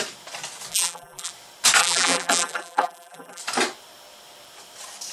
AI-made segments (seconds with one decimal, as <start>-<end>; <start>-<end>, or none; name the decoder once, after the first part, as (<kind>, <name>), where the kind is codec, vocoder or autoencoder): 0.7-1.3 (vocoder, BigVGAN v2); 1.8-3.4